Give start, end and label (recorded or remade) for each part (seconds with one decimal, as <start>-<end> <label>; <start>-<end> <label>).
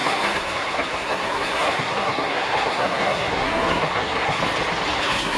0.0-4.4 remade; 4.4-5.0 recorded; 5.0-5.4 remade